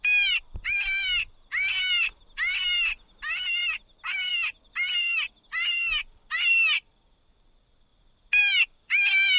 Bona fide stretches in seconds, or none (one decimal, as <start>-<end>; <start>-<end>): 0.0-9.4